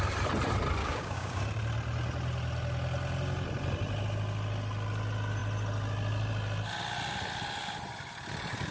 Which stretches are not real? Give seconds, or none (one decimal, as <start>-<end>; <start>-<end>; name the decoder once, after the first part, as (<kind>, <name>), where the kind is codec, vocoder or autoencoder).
0.8-1.4 (codec, DAC)